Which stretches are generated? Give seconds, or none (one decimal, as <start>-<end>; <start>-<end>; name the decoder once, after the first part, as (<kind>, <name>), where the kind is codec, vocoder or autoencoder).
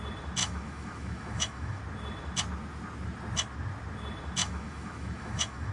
0.4-1.8 (autoencoder, DAC-VAE); 4.4-5.7